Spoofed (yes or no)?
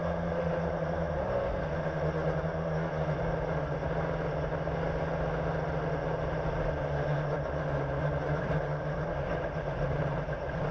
no